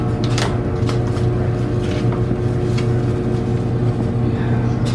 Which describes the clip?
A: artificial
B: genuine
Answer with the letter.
B